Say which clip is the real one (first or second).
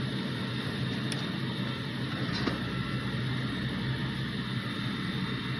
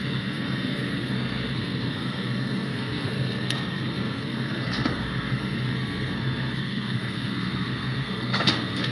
first